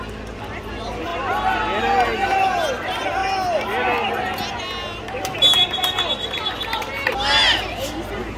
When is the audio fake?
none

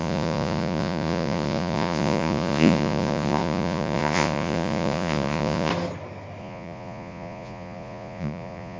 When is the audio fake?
0.0-5.7 (vocoder, Vocos); 6.4-8.8

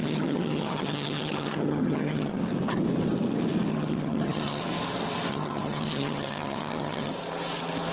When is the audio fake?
0.0-2.4 (vocoder, HiFi-GAN); 3.7-4.6; 5.3-7.1